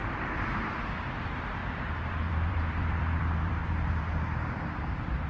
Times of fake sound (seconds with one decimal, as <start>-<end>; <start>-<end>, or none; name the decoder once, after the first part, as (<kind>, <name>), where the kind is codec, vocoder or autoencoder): 0.0-0.8 (vocoder, BigVGAN v2); 1.6-4.0